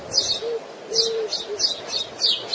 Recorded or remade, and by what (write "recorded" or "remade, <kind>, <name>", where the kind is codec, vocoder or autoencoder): recorded